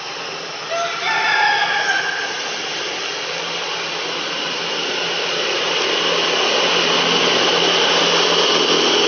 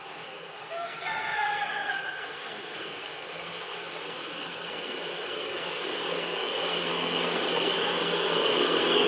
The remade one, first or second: second